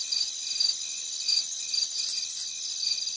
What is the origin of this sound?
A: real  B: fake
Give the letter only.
A